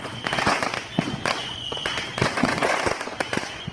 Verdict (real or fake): fake